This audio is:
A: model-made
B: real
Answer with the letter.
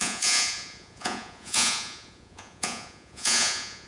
A